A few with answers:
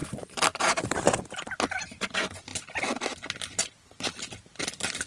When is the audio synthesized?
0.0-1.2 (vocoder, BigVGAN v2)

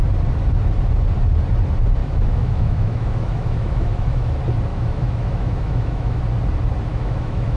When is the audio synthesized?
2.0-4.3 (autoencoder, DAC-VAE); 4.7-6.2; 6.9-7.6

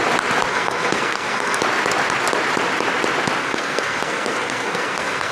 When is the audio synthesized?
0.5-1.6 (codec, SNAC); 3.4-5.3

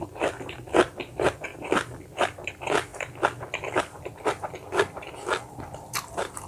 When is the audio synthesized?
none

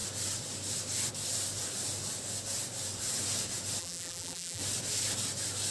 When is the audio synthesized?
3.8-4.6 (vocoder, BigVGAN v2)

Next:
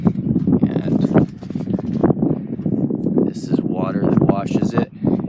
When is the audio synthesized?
none